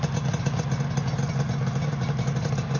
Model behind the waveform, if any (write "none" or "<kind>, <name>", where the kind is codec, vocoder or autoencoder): none